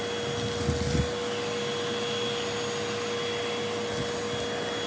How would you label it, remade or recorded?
recorded